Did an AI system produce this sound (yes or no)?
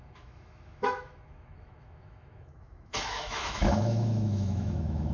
yes